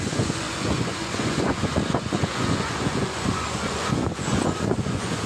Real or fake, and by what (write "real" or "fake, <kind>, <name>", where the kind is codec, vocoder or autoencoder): fake, vocoder, Vocos